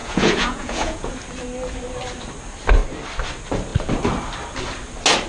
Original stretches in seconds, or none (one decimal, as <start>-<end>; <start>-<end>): 1.1-5.3